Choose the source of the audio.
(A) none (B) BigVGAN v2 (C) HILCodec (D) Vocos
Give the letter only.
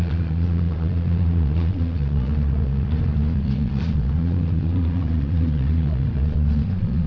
D